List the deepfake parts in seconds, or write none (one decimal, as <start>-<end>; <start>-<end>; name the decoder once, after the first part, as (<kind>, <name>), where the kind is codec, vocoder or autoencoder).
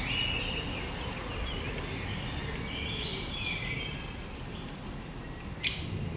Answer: 3.1-4.5 (vocoder, BigVGAN v2)